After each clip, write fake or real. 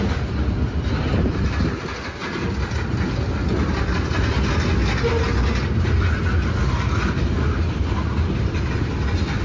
real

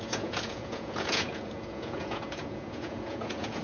fake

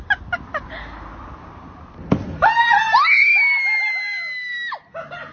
real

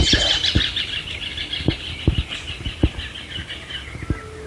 real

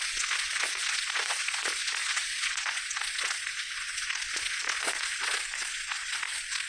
fake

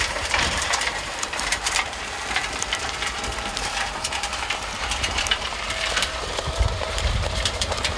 fake